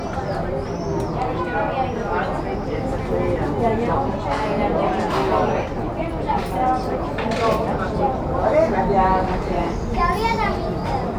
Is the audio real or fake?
real